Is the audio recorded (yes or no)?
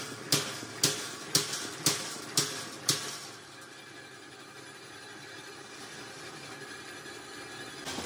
yes